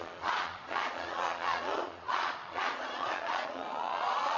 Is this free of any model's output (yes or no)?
no